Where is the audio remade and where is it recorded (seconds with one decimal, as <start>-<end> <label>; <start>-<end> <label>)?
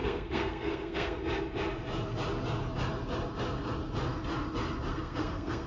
0.0-1.2 remade; 1.2-4.9 recorded; 4.9-5.7 remade